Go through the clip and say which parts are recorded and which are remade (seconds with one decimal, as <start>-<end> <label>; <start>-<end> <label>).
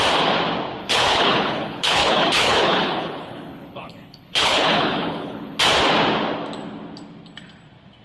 0.0-0.8 recorded; 0.8-5.6 remade; 5.6-8.0 recorded